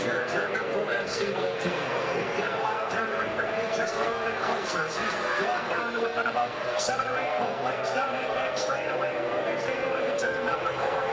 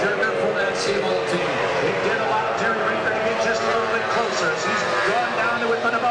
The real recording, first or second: second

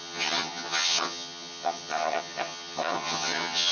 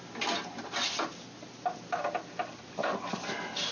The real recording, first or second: second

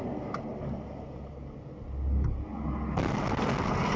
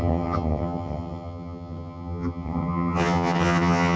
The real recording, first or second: first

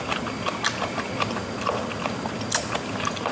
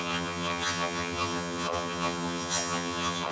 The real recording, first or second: first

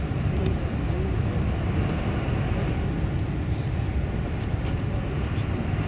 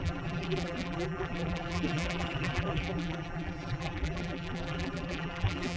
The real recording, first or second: first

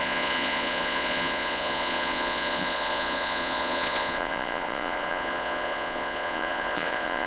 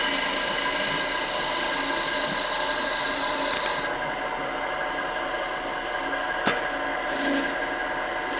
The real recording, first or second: second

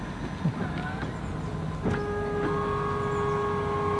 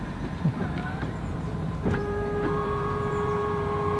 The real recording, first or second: first